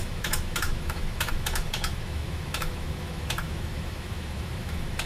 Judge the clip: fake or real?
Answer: fake